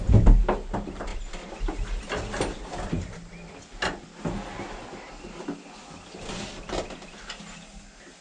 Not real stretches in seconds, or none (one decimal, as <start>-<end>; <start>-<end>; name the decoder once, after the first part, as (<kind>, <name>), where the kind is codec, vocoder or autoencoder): none